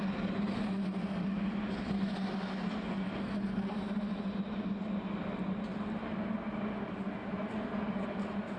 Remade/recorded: recorded